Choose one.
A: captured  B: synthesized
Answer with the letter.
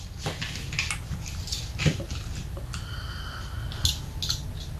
A